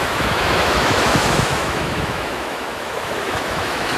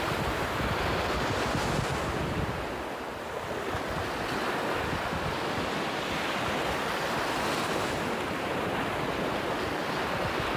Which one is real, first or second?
second